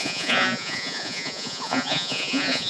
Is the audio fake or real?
fake